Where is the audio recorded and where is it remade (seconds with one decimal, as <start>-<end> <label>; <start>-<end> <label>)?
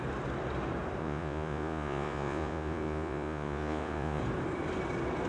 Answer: 0.0-1.0 recorded; 1.0-4.2 remade; 4.2-5.3 recorded